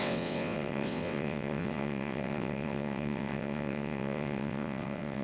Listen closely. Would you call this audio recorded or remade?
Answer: remade